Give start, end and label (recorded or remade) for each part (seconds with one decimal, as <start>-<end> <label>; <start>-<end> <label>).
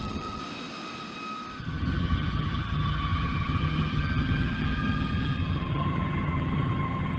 0.0-0.4 remade; 0.4-1.6 recorded; 1.6-7.2 remade